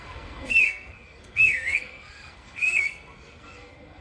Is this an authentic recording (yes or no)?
no